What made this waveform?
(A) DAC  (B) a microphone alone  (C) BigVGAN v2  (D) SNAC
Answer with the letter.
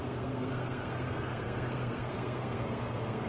D